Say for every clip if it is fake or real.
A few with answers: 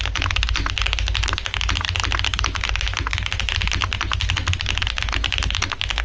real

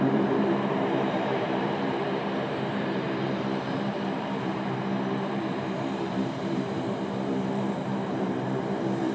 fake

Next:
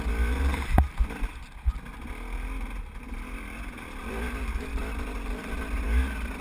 real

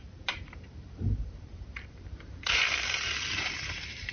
fake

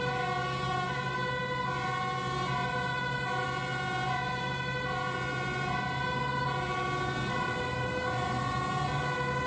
real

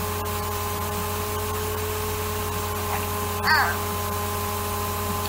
real